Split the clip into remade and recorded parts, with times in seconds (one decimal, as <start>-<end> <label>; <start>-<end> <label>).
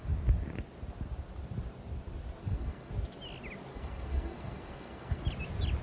0.0-2.4 recorded; 2.4-2.9 remade; 2.9-3.7 recorded; 3.7-5.2 remade; 5.2-5.8 recorded